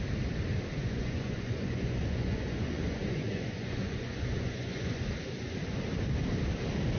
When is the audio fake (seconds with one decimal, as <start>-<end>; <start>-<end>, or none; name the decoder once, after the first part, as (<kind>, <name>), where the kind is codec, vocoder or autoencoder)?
0.8-5.0 (vocoder, Vocos)